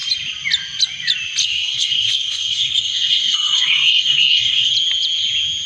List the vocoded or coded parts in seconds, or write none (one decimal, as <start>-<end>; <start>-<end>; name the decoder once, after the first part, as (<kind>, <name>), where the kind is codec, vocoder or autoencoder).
1.4-4.7 (codec, SNAC)